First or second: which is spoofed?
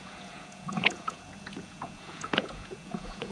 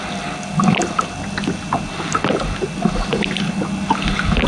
first